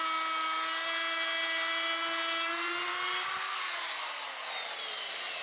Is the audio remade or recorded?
recorded